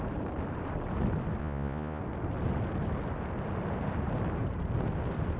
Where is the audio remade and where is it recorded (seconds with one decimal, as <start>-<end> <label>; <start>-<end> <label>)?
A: 0.0-1.4 recorded; 1.4-2.0 remade; 2.0-5.4 recorded